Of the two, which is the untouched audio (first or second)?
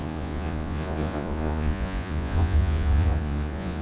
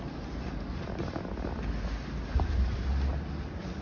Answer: second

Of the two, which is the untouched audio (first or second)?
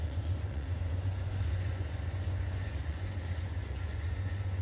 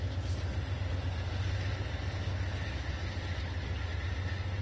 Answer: second